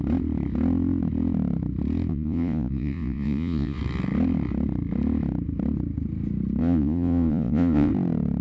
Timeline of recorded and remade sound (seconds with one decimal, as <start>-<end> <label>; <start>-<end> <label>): 0.0-2.1 recorded; 2.1-3.8 remade; 3.8-6.6 recorded; 6.6-7.9 remade; 7.9-8.4 recorded